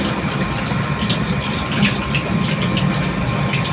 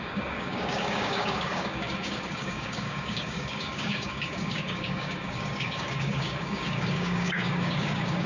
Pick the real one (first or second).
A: first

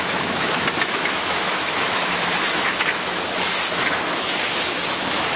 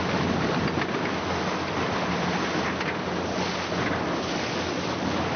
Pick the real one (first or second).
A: second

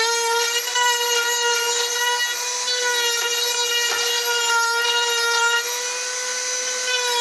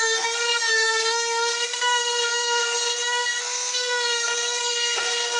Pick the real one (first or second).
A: first